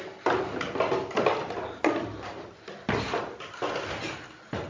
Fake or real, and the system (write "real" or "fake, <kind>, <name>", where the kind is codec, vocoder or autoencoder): real